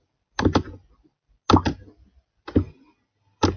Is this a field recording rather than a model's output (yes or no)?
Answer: yes